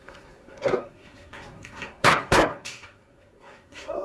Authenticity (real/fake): fake